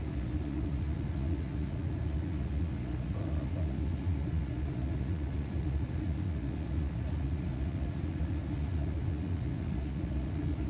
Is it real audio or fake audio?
fake